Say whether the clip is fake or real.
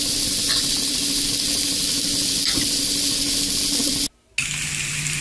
real